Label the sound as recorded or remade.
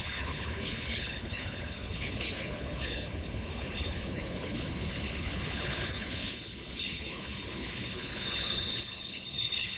remade